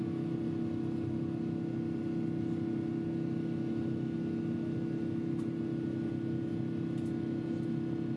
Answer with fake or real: real